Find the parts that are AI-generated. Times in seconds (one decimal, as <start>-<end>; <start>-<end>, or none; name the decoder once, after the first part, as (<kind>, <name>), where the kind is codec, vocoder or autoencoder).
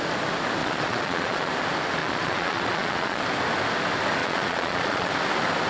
0.6-1.5 (vocoder, Vocos); 2.0-3.2; 4.2-5.1